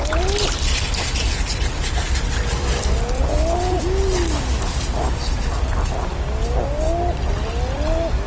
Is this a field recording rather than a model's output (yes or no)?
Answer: yes